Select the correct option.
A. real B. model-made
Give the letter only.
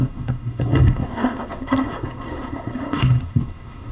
B